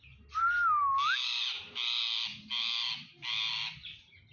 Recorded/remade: recorded